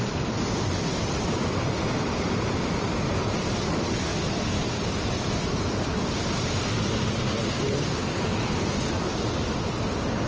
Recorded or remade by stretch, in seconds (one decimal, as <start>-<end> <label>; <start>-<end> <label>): 0.0-4.1 remade; 4.1-5.4 recorded; 5.4-10.3 remade